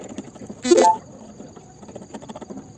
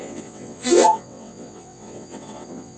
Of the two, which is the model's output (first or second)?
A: second